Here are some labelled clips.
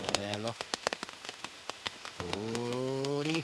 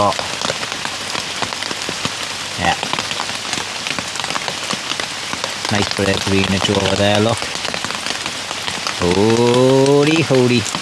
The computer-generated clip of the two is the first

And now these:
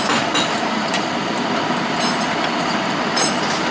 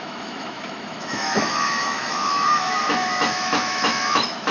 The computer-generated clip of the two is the second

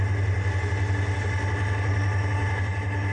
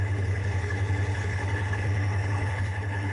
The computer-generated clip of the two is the second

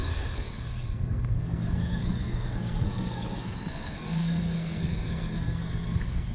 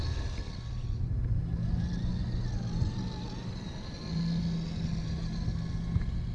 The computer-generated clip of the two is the first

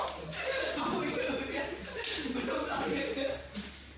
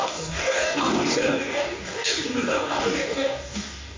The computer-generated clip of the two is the second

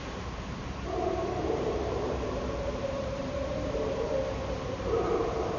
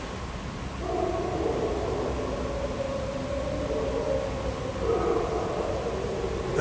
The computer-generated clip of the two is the first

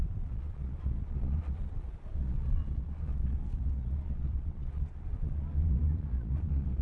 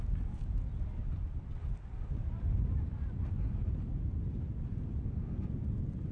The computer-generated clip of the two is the first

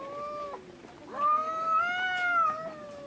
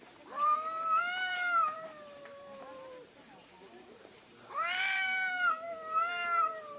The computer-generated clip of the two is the second